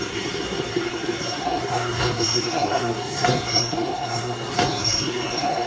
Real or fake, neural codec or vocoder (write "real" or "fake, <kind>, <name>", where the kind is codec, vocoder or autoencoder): fake, codec, SNAC